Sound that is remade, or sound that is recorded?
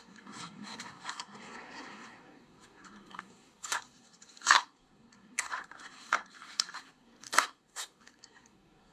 remade